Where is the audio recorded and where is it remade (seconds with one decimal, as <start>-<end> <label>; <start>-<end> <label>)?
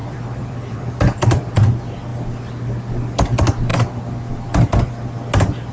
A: 0.0-1.5 remade; 1.5-5.7 recorded